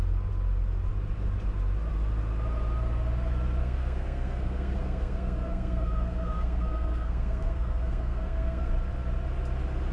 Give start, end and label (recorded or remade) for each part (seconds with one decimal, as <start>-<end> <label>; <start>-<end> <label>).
0.0-3.6 recorded; 3.6-8.7 remade; 8.7-9.9 recorded